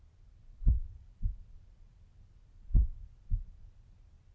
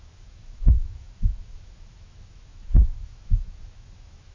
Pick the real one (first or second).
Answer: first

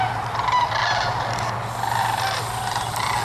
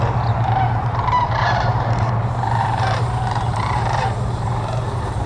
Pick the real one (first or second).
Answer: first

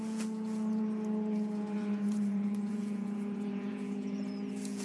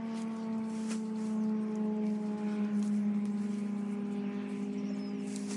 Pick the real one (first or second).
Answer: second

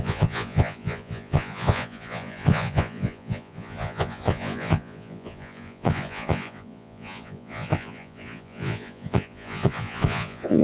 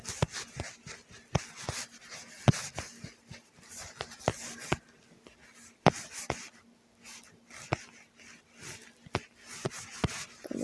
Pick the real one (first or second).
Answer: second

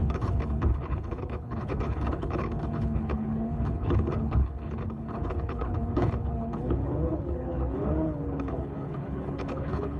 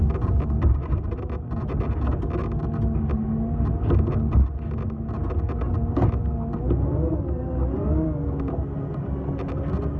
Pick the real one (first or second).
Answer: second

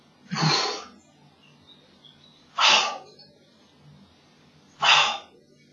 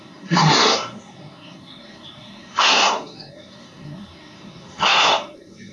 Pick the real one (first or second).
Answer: first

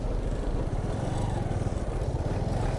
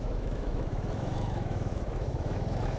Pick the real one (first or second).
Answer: first